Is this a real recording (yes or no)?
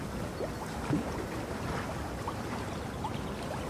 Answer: yes